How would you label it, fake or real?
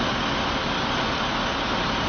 real